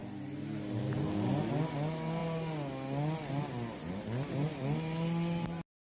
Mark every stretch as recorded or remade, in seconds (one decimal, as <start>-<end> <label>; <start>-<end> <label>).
0.0-5.9 recorded